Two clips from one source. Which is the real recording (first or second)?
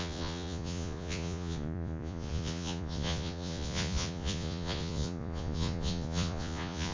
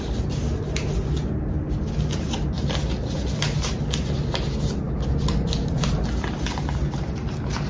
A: second